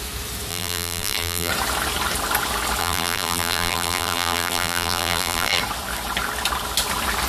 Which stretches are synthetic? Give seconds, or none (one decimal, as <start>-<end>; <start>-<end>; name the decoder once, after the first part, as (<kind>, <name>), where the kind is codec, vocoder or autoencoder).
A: 0.5-1.5 (vocoder, BigVGAN v2); 2.8-5.6